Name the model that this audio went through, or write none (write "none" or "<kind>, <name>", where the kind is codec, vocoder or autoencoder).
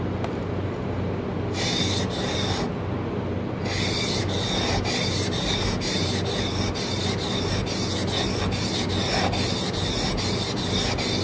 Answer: none